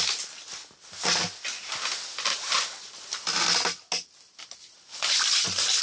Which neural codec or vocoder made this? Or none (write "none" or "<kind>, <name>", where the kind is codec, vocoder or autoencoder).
none